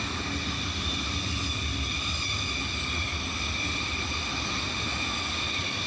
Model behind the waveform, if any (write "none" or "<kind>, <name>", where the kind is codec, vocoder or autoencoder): none